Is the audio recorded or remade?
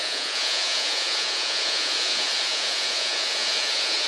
remade